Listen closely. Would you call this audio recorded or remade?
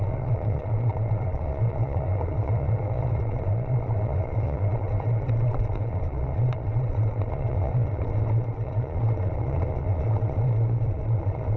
remade